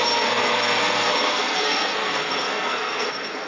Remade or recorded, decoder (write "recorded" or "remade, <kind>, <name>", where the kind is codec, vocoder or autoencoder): remade, codec, SNAC